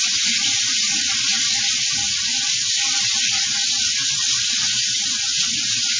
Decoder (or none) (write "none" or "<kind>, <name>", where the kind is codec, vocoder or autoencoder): none